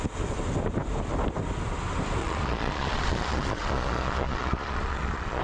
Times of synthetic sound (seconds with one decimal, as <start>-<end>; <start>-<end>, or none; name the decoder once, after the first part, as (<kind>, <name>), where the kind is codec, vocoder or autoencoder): 2.2-5.4 (vocoder, Vocos)